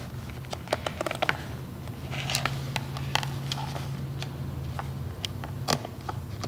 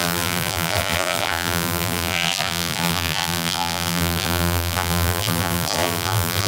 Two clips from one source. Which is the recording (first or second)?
first